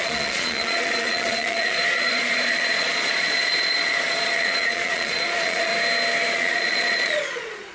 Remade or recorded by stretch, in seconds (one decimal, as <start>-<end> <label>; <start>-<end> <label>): 0.0-5.7 remade; 5.7-6.3 recorded; 6.3-7.7 remade

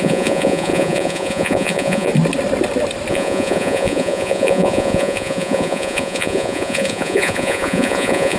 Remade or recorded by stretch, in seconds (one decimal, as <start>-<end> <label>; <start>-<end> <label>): 0.0-2.1 remade; 2.1-3.1 recorded; 3.1-8.4 remade

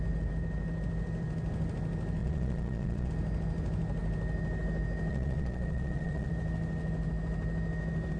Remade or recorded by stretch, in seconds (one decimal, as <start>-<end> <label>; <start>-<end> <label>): 0.0-2.2 recorded; 2.2-3.1 remade; 3.1-5.1 recorded; 5.1-6.3 remade; 6.3-8.2 recorded

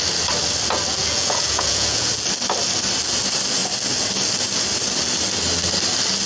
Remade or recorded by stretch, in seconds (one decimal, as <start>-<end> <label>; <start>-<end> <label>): 0.0-1.0 recorded; 1.0-2.1 remade; 2.1-6.3 recorded

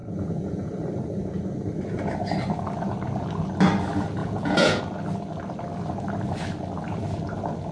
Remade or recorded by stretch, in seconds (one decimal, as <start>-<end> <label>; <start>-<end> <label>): 0.0-0.7 remade; 0.7-4.2 recorded; 4.2-4.8 remade; 4.8-7.7 recorded

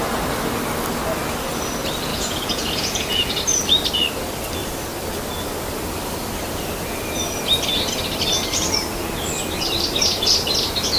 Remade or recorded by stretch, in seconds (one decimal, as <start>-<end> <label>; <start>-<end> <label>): 0.0-2.1 recorded; 2.1-3.4 remade; 3.4-11.0 recorded